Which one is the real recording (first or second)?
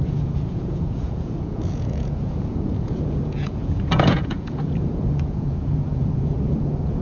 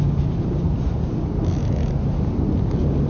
second